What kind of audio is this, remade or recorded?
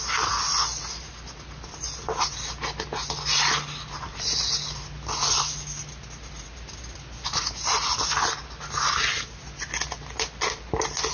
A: recorded